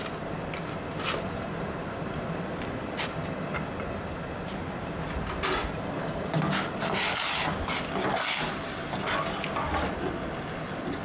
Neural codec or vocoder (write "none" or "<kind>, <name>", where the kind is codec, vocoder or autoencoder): none